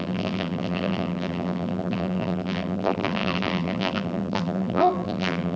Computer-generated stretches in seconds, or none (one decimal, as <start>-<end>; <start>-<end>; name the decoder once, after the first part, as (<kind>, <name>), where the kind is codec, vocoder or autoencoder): 0.0-5.6 (vocoder, BigVGAN v2)